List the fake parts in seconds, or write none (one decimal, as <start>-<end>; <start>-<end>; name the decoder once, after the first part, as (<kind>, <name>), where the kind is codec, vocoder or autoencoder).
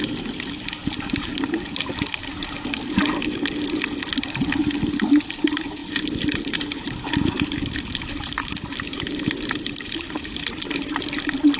0.8-1.3 (vocoder, BigVGAN v2); 5.8-11.0